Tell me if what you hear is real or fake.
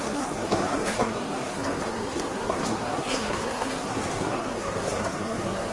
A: fake